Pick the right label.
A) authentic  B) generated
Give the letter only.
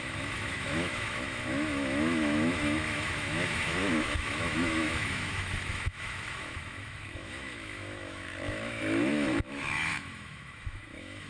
B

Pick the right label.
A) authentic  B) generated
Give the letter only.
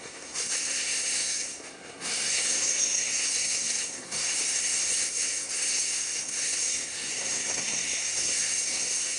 B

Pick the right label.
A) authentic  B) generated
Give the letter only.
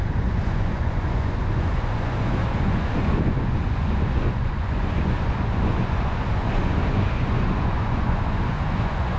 B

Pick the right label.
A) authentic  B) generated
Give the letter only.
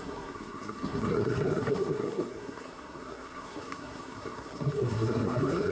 B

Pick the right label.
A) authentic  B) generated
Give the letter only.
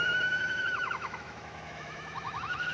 B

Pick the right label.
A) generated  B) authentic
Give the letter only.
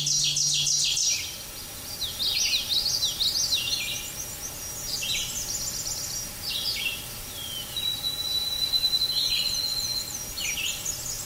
B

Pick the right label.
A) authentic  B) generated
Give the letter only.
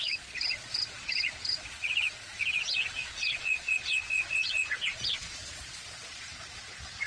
B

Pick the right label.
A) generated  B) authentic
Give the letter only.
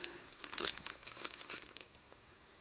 A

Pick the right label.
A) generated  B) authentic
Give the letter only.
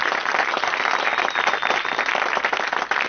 B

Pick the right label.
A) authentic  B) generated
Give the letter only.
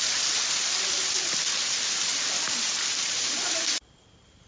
A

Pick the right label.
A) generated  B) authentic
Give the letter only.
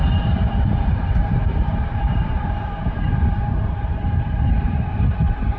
A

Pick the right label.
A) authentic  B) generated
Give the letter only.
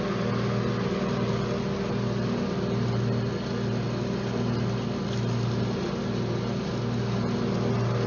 A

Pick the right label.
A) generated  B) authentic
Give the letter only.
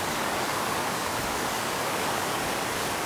A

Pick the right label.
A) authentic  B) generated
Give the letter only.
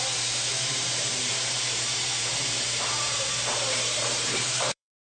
B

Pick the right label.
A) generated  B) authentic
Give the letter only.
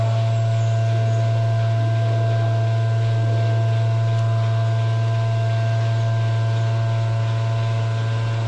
B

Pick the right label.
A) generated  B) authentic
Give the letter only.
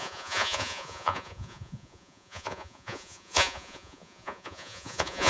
A